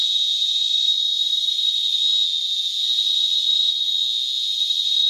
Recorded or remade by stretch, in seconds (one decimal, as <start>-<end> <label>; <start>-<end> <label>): 0.0-0.6 remade; 0.6-5.1 recorded